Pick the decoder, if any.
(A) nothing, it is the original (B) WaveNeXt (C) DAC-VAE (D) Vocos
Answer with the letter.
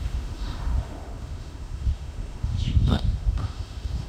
C